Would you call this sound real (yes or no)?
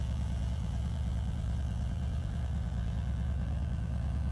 no